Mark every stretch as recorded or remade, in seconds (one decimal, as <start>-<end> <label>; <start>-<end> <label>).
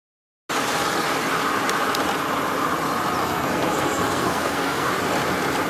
0.0-3.2 recorded; 3.2-4.9 remade; 4.9-5.7 recorded